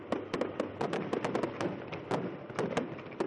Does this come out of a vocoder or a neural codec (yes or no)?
no